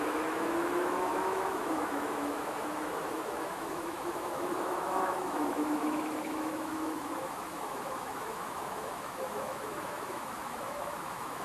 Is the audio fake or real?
fake